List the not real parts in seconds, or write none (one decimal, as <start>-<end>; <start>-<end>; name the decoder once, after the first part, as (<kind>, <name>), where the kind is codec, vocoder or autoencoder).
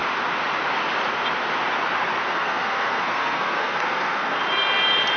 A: 2.2-4.4 (codec, SNAC)